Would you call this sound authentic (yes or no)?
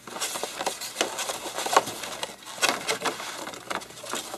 yes